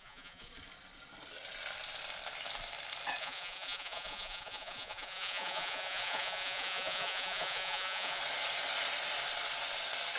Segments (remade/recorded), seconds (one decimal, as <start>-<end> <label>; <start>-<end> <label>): 0.0-0.5 remade; 0.5-3.2 recorded; 3.2-8.2 remade; 8.2-10.2 recorded